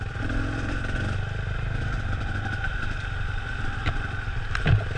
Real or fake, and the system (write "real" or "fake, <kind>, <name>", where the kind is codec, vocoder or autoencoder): fake, vocoder, BigVGAN v2